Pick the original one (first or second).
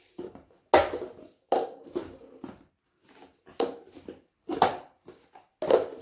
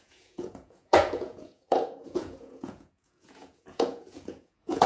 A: first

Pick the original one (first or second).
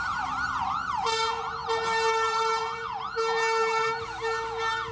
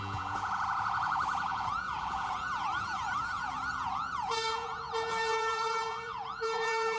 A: first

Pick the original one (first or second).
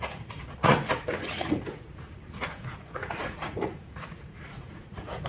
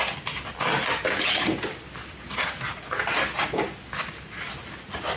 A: second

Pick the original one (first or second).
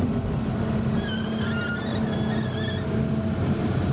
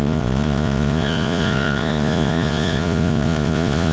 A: first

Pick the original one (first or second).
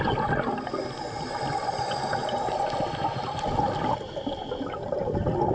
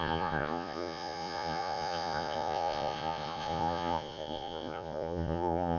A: first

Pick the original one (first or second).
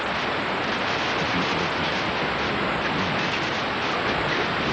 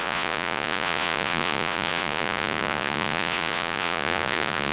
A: first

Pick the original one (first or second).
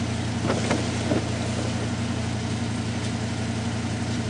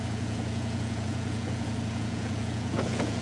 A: first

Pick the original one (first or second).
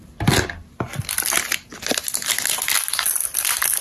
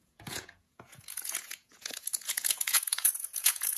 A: first